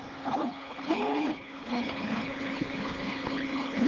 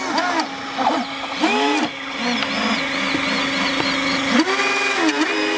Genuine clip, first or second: second